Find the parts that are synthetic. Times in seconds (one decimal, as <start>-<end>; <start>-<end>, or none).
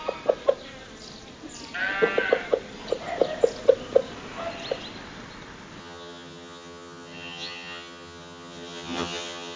5.8-9.6